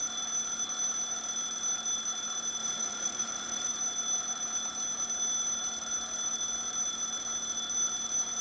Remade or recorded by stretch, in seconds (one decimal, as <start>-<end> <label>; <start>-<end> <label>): 0.0-2.6 recorded; 2.6-3.7 remade; 3.7-8.4 recorded